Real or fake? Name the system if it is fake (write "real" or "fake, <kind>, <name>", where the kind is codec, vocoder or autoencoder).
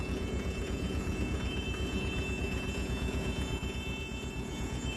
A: fake, vocoder, Vocos